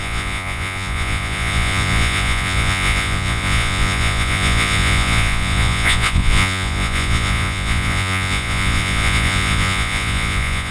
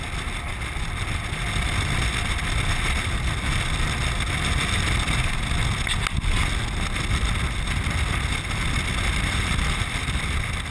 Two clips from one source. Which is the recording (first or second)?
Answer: second